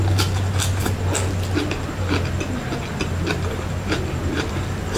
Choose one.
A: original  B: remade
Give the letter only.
A